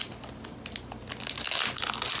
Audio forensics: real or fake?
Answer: real